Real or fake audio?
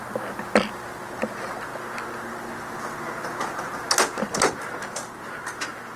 real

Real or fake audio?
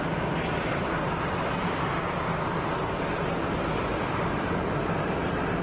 real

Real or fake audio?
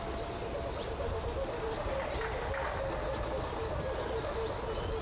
real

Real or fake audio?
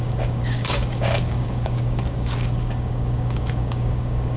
fake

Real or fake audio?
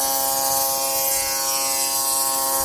real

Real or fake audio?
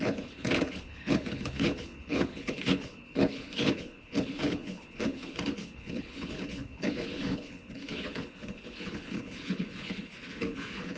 fake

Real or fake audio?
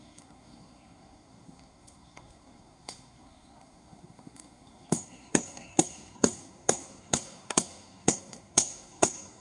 fake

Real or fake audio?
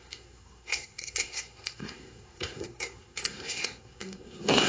fake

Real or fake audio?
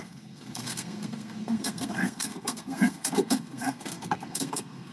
fake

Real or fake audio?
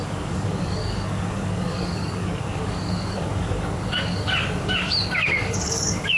fake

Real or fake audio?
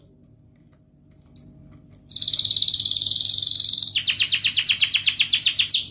fake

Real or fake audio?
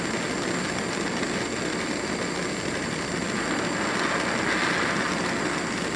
real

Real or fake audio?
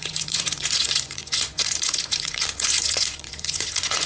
fake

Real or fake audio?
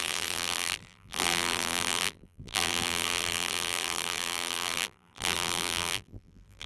fake